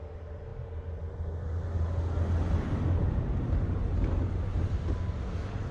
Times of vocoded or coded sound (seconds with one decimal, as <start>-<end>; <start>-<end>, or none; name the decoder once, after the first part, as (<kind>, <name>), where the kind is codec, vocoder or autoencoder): 4.5-5.0 (vocoder, BigVGAN v2)